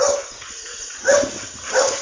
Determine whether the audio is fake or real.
real